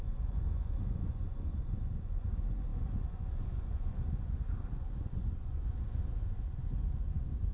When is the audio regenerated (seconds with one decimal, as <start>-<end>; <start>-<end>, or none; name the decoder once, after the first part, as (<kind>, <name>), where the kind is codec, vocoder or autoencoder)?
0.0-7.5 (vocoder, Vocos)